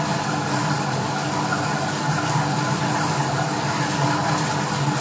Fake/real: real